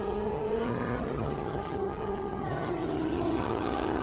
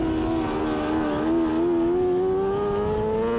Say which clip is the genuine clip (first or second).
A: second